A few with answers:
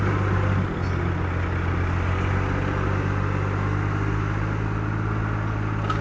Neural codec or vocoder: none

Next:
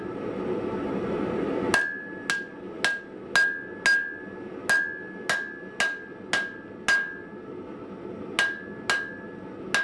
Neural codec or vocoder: none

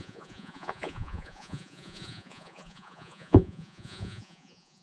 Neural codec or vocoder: vocoder, Vocos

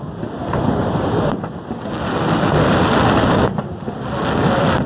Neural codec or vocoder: none